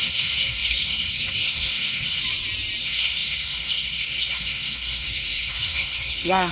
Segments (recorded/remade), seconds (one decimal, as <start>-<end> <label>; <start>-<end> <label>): 0.0-2.2 remade; 2.2-2.8 recorded; 2.8-6.5 remade